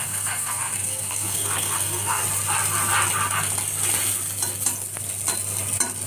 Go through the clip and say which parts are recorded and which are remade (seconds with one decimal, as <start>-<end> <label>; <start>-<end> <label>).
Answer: 0.0-2.2 remade; 2.2-6.1 recorded